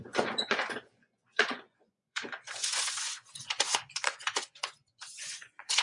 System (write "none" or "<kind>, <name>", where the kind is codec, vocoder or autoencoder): vocoder, Vocos